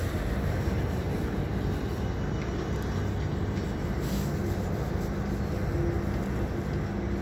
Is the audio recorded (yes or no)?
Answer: yes